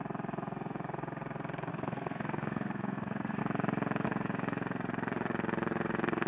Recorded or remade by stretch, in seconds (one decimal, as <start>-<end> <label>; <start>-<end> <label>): 0.0-1.7 recorded; 1.7-3.4 remade; 3.4-6.3 recorded